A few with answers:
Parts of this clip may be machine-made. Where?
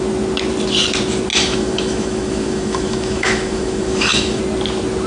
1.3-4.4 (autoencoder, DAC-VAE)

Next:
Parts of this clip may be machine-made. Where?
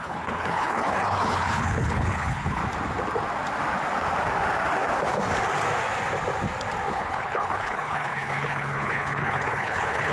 0.0-2.6 (codec, HILCodec); 6.9-10.1